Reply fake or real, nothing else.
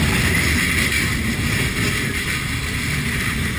real